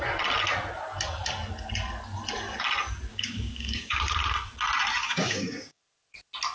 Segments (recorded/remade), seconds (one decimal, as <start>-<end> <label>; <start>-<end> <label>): 0.0-3.1 recorded; 3.1-4.0 remade; 4.0-5.0 recorded; 5.0-5.8 remade; 5.8-6.5 recorded